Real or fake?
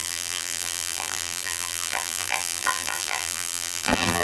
fake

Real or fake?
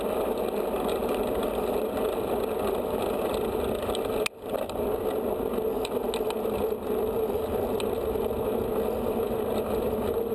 real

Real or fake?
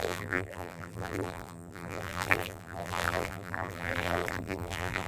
fake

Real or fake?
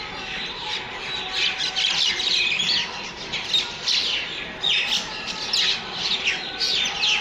real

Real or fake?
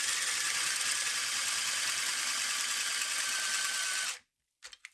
real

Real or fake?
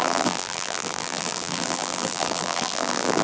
fake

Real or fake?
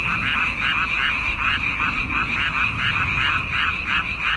real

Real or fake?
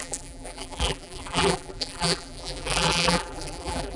fake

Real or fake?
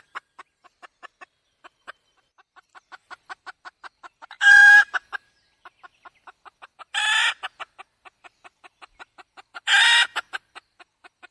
real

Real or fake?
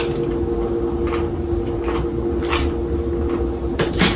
real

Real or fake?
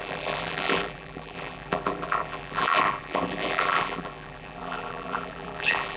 fake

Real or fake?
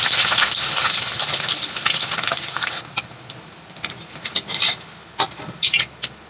real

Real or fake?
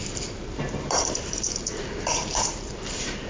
fake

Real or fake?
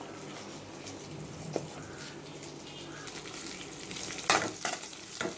real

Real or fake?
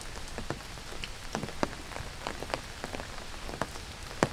real